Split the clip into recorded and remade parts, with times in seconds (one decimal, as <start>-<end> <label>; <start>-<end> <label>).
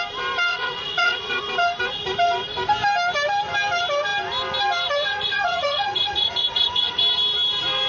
0.0-0.5 recorded; 0.5-1.4 remade; 1.4-5.1 recorded; 5.1-7.0 remade; 7.0-7.9 recorded